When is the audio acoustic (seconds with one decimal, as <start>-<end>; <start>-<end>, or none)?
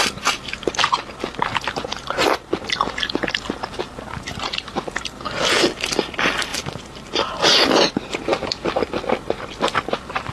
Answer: 1.5-5.0; 6.5-7.1